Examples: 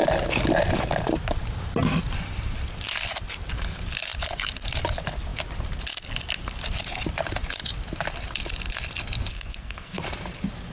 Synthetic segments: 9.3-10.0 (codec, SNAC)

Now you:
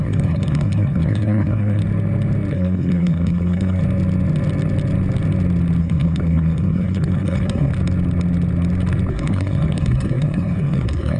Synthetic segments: 0.0-1.8 (codec, SNAC); 2.5-3.8; 5.8-7.7; 9.1-11.2

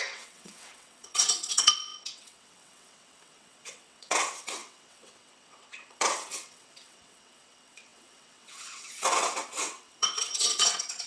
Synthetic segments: 0.0-11.1 (vocoder, WaveNeXt)

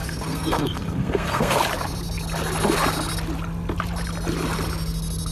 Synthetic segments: 0.0-1.6 (codec, SNAC)

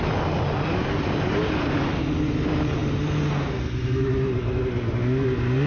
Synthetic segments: none